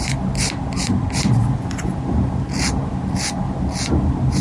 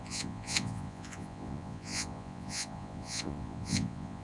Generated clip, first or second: second